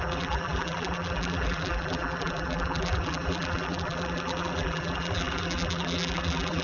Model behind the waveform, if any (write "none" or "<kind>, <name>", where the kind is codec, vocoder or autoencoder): vocoder, BigVGAN v2